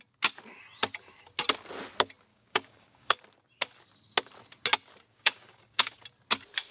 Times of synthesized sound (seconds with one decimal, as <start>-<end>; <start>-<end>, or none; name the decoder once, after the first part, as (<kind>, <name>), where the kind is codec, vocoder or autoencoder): 2.3-3.2 (codec, DAC); 5.1-6.0